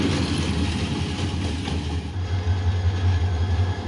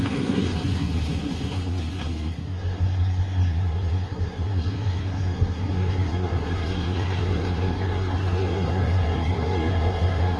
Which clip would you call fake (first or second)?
second